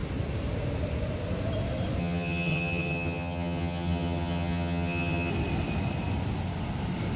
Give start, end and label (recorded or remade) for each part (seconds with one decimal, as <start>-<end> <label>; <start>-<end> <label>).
0.0-2.0 recorded; 2.0-5.3 remade; 5.3-7.2 recorded